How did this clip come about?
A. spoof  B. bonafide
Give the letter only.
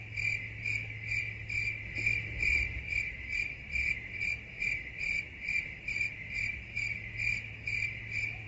B